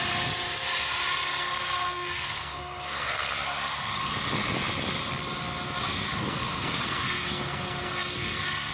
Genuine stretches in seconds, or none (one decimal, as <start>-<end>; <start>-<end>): 0.0-1.3; 3.3-5.9